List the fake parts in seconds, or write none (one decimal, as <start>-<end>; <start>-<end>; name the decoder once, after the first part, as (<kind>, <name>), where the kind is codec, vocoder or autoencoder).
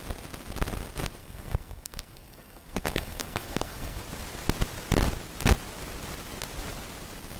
1.2-4.0 (codec, SNAC)